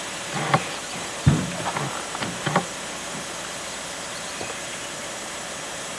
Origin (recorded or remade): remade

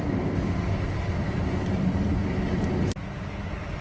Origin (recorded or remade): recorded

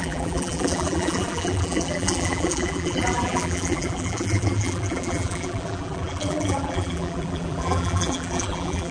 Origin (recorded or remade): remade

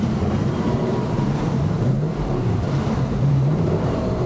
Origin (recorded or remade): remade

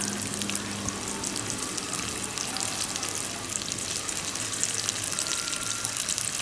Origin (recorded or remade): recorded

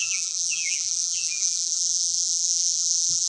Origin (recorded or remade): remade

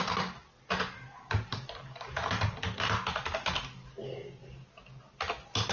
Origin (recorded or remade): recorded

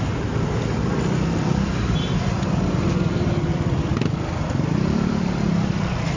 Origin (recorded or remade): remade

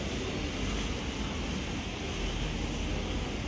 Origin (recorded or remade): recorded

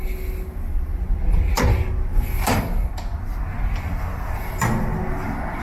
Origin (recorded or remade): recorded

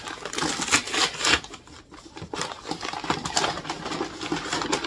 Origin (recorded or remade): recorded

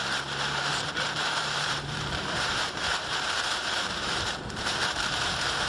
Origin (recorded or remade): remade